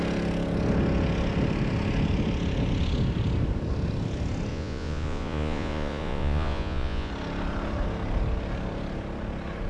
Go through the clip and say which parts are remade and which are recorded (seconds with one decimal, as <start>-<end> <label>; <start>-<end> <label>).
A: 0.0-4.5 recorded; 4.5-7.1 remade; 7.1-9.7 recorded

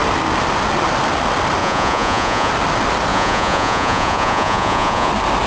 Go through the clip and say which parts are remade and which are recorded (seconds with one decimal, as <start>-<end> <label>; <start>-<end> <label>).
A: 0.0-1.6 recorded; 1.6-2.5 remade; 2.5-3.1 recorded; 3.1-5.1 remade; 5.1-5.5 recorded